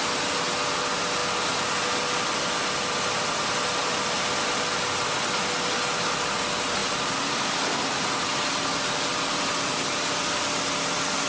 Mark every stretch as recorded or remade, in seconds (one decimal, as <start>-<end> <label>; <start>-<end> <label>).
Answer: 0.0-6.8 recorded; 6.8-7.3 remade; 7.3-11.3 recorded